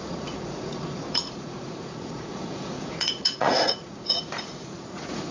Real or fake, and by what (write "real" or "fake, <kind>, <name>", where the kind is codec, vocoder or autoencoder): fake, vocoder, Vocos